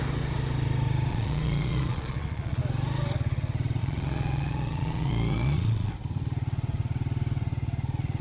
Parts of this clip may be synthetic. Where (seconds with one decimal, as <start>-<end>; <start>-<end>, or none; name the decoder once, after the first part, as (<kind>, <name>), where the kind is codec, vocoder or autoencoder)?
1.1-2.6 (vocoder, Vocos); 3.8-5.9